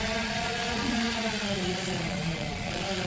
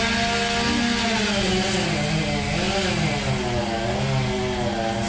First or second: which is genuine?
second